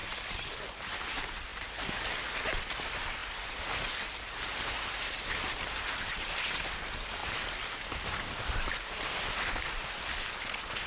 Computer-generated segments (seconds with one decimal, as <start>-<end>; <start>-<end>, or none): 0.0-0.6; 1.5-2.2; 7.2-8.4